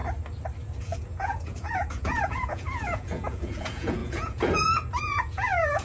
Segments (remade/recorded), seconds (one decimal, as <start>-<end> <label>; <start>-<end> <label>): 0.0-0.8 recorded; 0.8-5.8 remade